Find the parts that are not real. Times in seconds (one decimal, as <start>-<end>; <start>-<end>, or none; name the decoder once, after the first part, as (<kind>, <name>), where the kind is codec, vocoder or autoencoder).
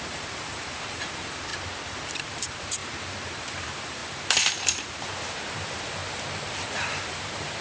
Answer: 0.0-1.5 (vocoder, BigVGAN v2); 2.2-2.8; 3.4-6.0; 6.5-7.6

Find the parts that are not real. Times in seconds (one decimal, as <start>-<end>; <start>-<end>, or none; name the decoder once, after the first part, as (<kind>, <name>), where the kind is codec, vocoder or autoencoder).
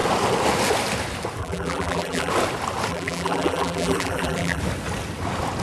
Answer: 1.4-2.3 (vocoder, BigVGAN v2); 2.9-4.6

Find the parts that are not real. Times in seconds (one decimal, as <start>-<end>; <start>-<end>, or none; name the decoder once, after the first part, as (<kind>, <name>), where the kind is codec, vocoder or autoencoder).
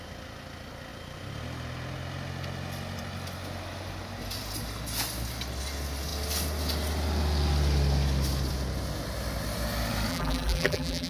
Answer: 10.1-11.1 (vocoder, BigVGAN v2)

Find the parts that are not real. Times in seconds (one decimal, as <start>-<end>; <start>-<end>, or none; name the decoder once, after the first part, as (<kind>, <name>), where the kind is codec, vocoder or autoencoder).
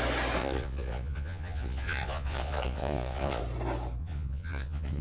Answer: 0.4-3.4 (vocoder, Vocos); 4.0-5.0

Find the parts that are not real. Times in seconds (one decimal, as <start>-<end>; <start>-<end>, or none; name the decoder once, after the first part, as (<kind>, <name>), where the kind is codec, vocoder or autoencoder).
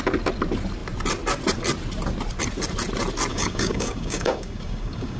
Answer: 3.3-5.2 (codec, DAC)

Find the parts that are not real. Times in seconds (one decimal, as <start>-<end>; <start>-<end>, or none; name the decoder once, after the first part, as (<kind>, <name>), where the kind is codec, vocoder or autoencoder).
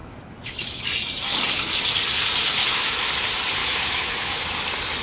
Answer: 0.0-0.8 (autoencoder, DAC-VAE); 2.6-3.1; 3.6-4.4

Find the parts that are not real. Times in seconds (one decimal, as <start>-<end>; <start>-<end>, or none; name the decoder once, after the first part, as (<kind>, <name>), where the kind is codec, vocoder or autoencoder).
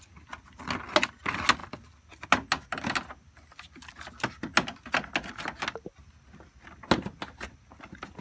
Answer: none